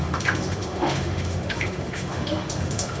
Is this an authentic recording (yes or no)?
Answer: no